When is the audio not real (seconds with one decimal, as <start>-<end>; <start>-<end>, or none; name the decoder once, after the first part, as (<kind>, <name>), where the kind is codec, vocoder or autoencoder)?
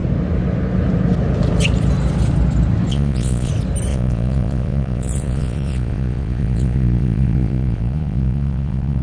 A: 2.9-3.5 (vocoder, Vocos); 3.9-9.0